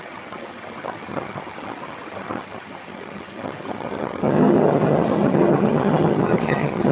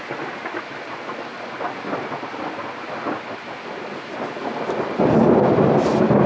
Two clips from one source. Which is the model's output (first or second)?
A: first